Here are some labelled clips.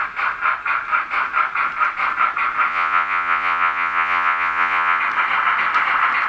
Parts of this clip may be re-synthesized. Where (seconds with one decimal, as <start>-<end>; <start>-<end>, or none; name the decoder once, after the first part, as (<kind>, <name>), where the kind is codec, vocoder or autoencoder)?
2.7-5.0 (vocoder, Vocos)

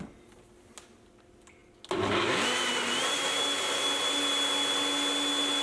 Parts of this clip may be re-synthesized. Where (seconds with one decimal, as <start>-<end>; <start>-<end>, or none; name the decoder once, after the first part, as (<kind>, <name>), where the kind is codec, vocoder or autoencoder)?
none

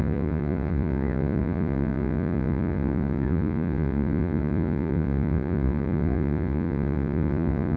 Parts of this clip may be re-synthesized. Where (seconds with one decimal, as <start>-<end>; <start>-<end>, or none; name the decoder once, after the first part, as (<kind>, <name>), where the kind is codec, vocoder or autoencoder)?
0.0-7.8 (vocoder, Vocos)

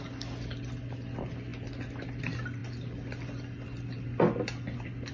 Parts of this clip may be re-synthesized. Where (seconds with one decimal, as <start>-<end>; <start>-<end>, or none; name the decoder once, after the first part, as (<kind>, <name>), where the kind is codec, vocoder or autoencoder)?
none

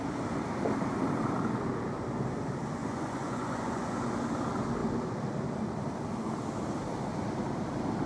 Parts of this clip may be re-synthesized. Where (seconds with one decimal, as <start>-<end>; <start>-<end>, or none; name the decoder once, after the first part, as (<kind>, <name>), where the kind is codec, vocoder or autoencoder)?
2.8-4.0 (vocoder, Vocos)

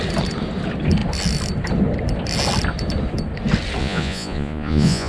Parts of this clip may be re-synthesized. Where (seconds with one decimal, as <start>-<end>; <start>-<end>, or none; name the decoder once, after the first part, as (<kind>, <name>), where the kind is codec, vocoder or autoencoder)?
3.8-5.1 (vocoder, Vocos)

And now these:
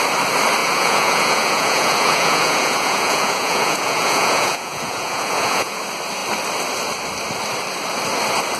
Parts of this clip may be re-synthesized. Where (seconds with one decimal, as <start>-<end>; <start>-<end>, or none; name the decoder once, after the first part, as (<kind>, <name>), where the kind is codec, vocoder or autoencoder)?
0.6-5.8 (vocoder, Vocos)